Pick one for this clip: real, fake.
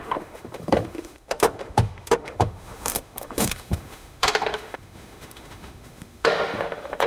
fake